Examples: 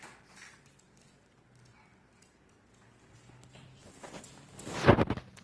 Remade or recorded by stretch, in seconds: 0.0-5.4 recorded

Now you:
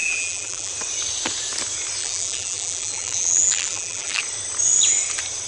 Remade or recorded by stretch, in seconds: 0.0-0.7 remade; 0.7-2.0 recorded; 2.0-4.2 remade; 4.2-5.5 recorded